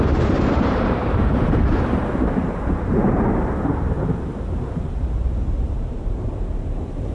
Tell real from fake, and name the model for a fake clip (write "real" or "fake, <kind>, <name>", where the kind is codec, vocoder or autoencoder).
fake, vocoder, BigVGAN v2